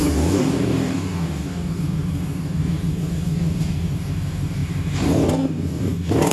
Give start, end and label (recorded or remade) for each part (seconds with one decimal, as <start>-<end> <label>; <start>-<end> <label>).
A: 0.0-6.3 remade